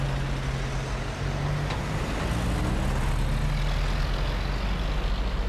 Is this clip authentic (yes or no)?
yes